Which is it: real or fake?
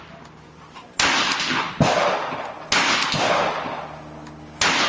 real